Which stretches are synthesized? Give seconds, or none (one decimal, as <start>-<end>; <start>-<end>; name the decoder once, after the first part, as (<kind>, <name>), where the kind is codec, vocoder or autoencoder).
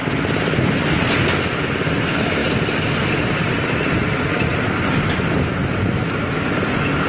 none